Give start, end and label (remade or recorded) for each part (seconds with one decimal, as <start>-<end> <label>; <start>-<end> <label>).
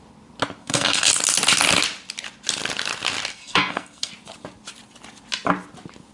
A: 0.0-0.6 recorded; 0.6-1.1 remade; 1.1-3.3 recorded; 3.3-4.1 remade; 4.1-6.1 recorded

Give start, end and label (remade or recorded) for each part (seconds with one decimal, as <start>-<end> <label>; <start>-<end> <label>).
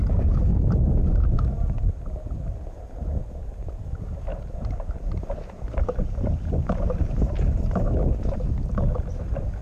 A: 0.0-0.5 recorded; 0.5-1.8 remade; 1.8-4.3 recorded; 4.3-7.8 remade; 7.8-9.6 recorded